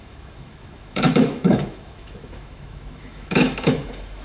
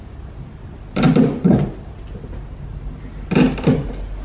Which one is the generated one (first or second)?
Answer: first